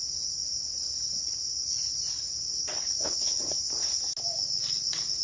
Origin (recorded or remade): recorded